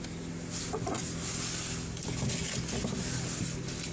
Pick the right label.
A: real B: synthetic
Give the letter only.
A